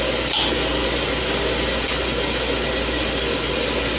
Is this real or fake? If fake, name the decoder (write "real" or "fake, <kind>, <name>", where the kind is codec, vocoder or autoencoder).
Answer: real